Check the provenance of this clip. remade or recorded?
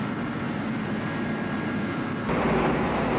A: recorded